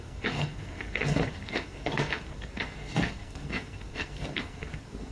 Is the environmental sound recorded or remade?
remade